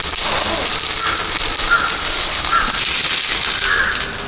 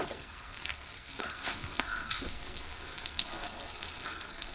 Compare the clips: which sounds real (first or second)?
first